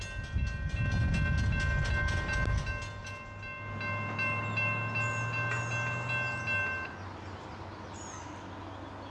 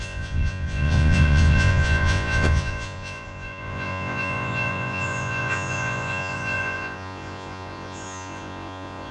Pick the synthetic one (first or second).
second